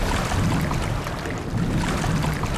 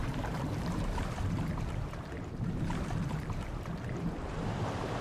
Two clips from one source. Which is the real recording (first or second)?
first